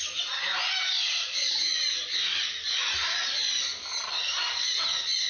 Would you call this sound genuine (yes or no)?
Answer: yes